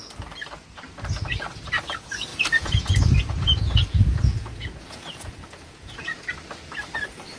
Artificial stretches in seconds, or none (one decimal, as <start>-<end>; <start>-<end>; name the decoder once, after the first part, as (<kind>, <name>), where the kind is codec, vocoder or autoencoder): 2.3-6.2 (vocoder, Vocos)